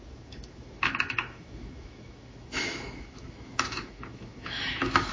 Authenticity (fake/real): fake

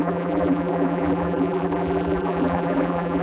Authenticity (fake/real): fake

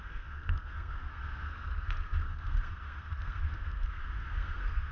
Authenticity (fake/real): fake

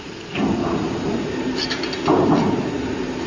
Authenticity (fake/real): real